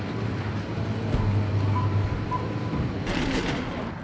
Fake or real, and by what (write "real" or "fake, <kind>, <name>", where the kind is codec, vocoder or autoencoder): real